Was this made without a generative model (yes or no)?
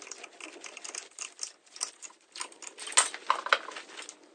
yes